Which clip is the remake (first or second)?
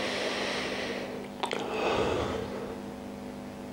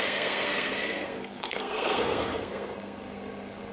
second